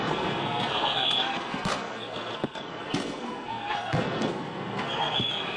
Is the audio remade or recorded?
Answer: remade